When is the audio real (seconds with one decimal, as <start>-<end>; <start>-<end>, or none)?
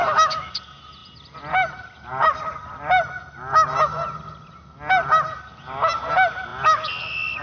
0.5-7.4